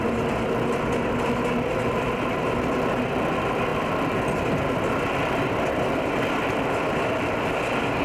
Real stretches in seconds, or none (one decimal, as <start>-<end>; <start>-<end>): 0.0-8.0